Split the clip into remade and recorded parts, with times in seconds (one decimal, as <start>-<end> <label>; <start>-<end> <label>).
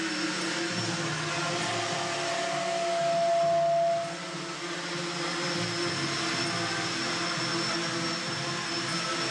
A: 0.0-9.3 recorded